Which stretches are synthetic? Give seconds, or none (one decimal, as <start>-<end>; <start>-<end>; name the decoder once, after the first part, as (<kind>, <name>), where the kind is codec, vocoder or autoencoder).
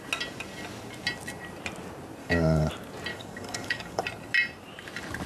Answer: 2.2-2.7 (codec, DAC); 3.1-4.0